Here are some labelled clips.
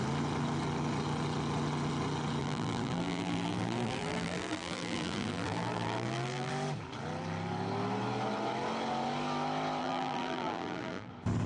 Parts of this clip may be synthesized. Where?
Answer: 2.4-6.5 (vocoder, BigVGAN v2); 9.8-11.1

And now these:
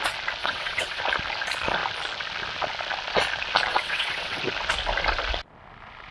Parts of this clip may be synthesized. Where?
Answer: 0.4-1.0 (vocoder, WaveNeXt); 3.7-4.4

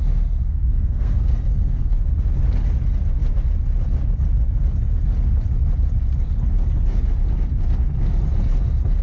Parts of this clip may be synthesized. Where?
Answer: 0.4-2.1 (codec, SNAC)

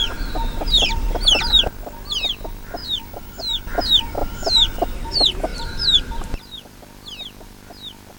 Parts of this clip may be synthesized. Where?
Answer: 2.8-3.4 (vocoder, BigVGAN v2); 4.2-5.0; 5.5-6.8

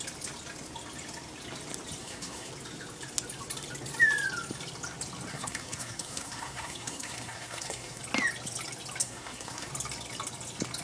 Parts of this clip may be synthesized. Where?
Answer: 2.0-2.5 (codec, SNAC); 5.3-8.0; 9.0-9.7